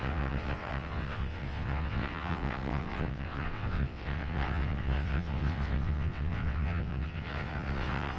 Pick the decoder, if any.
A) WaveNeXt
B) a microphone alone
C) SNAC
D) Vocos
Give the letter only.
A